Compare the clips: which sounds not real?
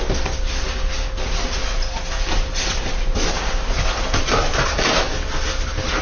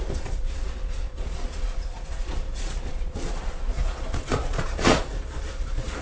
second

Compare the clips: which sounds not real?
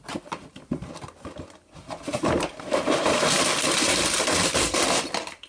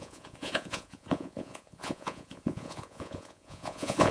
second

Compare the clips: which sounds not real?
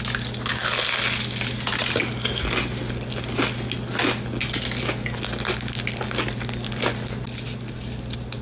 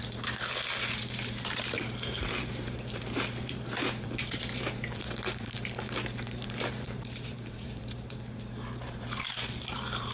second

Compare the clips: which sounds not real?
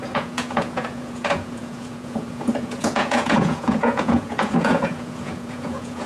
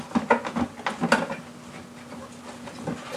first